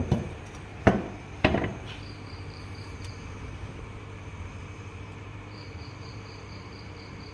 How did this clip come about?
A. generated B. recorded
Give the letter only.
A